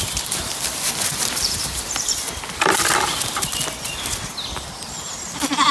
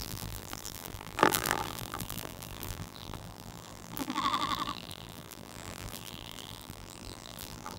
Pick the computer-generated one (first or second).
second